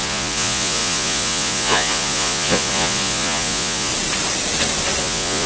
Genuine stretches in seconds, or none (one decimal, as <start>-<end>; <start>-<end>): 3.9-5.0